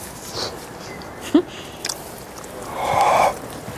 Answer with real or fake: real